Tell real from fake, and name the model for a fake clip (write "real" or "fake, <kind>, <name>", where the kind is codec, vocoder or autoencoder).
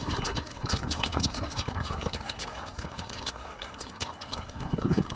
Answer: fake, codec, SNAC